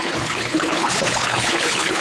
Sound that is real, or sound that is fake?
fake